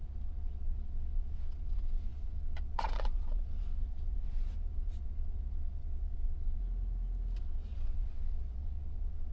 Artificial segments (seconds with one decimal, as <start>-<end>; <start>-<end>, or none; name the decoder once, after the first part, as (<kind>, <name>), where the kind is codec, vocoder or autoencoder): 0.0-6.6 (vocoder, WaveNeXt); 7.4-9.3